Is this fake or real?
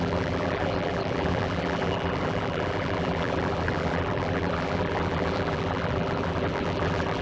fake